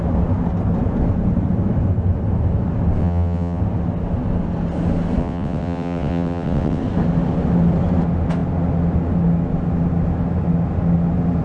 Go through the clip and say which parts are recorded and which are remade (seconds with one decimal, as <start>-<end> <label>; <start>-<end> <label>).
0.0-3.0 recorded; 3.0-3.6 remade; 3.6-5.2 recorded; 5.2-6.8 remade; 6.8-11.4 recorded